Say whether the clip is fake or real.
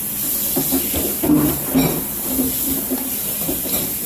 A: real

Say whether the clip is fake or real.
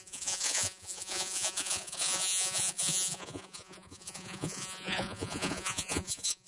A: fake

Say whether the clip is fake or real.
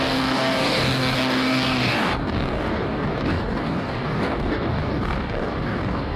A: fake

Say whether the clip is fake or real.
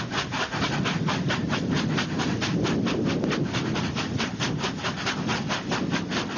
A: real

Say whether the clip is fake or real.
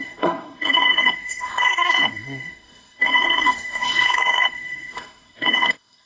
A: fake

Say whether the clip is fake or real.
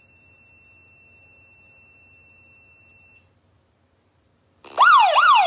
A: real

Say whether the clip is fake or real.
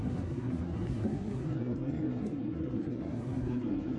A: fake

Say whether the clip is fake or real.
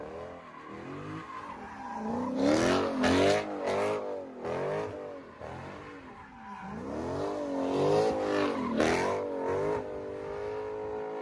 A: real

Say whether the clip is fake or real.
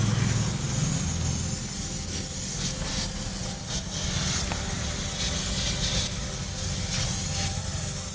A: real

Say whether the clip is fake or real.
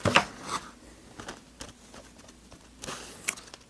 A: real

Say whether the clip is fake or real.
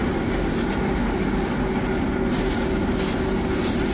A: real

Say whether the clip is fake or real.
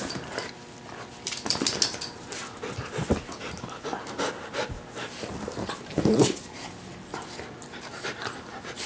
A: real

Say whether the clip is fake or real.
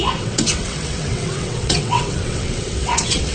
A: fake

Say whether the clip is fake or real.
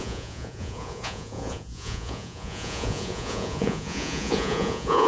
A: fake